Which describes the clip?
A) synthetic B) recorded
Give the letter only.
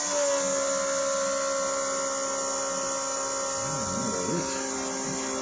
B